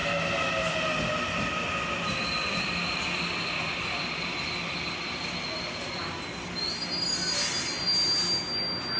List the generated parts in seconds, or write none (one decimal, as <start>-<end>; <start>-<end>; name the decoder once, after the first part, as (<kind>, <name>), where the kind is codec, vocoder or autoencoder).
none

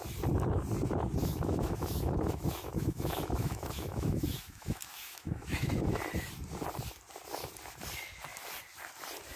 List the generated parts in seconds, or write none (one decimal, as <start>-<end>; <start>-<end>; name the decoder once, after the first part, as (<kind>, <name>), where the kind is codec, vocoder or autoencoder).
1.2-5.7 (autoencoder, DAC-VAE)

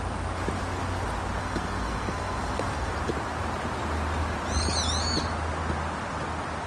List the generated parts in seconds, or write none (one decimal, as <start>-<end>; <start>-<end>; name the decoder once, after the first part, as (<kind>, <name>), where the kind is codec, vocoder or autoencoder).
1.4-2.9 (codec, SNAC)

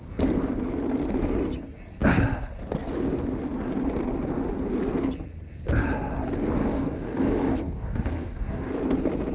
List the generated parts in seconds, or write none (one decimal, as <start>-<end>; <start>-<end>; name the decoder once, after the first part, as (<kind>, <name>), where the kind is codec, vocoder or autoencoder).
6.6-8.7 (codec, DAC)

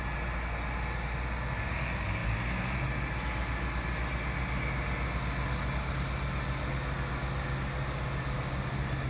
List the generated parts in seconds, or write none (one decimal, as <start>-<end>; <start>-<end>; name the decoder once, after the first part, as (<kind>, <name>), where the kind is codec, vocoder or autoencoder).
none

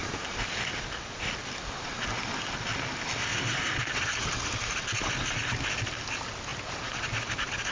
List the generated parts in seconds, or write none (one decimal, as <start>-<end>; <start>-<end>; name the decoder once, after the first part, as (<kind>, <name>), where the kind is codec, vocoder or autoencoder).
3.3-4.3 (vocoder, BigVGAN v2); 6.5-7.1

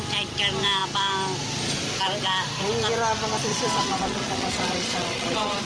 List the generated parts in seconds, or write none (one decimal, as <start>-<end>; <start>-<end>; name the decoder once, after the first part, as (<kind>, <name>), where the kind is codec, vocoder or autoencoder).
3.5-5.6 (vocoder, WaveNeXt)

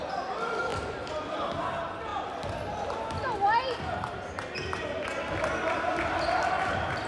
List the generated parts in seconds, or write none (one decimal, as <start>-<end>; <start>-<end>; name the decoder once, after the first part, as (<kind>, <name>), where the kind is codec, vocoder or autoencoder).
none